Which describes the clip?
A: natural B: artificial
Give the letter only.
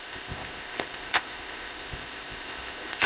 B